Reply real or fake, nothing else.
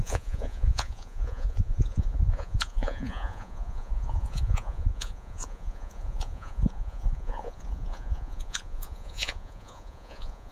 fake